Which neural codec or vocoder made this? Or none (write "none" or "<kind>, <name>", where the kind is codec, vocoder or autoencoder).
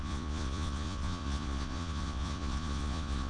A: vocoder, Vocos